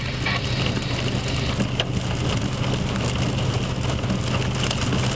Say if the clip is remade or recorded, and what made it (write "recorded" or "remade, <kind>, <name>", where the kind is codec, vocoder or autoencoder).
recorded